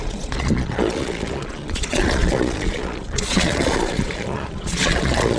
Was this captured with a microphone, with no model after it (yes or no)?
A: no